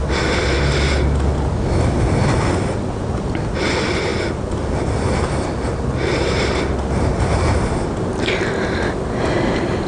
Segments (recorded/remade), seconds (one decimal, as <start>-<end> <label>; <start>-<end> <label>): 0.0-9.9 recorded